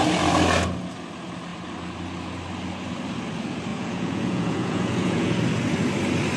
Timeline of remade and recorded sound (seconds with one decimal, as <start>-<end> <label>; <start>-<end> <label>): 0.0-3.7 recorded; 3.7-5.3 remade; 5.3-6.4 recorded